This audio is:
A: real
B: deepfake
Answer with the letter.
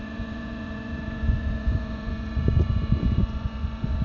B